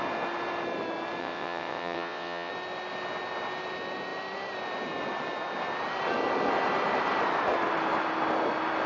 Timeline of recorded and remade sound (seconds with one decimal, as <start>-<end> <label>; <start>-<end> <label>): 0.0-1.2 recorded; 1.2-2.5 remade; 2.5-8.9 recorded

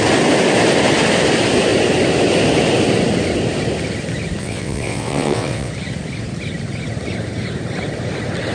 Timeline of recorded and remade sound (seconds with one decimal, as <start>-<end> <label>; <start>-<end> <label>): 0.0-4.4 recorded; 4.4-5.7 remade; 5.7-8.5 recorded